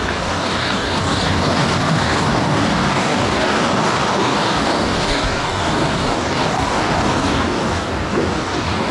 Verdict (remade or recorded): remade